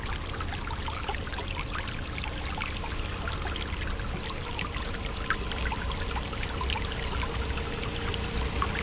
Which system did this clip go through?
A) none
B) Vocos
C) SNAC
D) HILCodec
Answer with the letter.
A